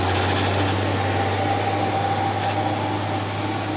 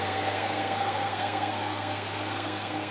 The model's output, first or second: second